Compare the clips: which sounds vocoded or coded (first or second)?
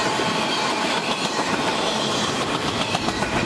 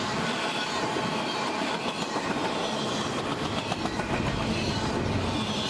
first